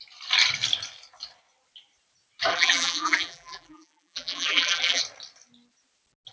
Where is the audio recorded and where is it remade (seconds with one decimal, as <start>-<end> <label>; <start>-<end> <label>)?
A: 0.0-2.5 recorded; 2.5-5.0 remade; 5.0-6.3 recorded